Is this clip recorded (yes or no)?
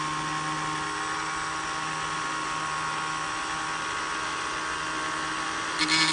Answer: yes